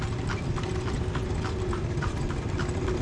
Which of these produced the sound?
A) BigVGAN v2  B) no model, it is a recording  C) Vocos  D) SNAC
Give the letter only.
B